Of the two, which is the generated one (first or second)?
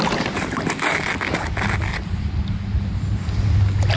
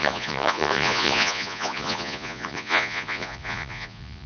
second